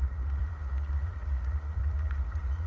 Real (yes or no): no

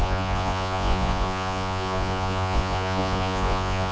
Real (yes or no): no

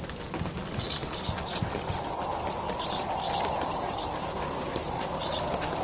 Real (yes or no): yes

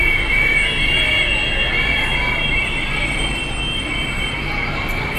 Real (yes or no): yes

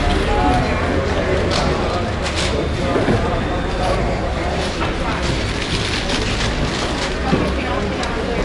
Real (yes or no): yes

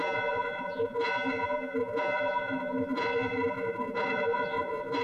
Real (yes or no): no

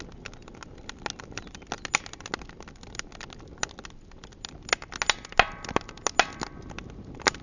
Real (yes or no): yes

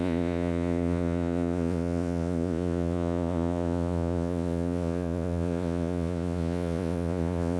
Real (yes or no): no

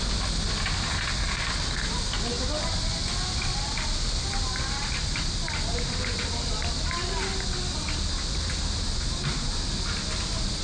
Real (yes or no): yes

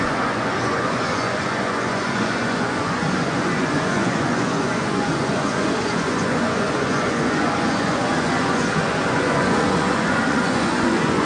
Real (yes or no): no